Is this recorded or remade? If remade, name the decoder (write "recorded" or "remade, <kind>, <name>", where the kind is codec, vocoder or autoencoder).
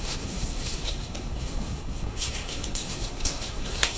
remade, codec, SNAC